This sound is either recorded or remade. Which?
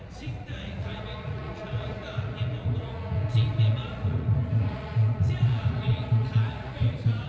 remade